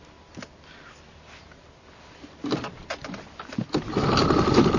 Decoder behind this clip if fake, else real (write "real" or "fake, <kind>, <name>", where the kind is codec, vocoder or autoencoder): real